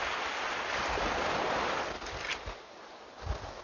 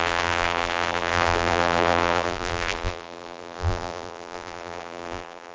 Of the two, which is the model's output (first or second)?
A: second